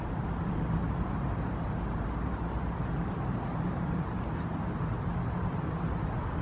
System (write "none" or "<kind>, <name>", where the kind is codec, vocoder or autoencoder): vocoder, BigVGAN v2